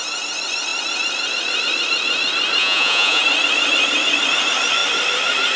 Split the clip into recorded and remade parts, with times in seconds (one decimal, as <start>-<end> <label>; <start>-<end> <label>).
0.0-2.6 recorded; 2.6-3.2 remade; 3.2-5.6 recorded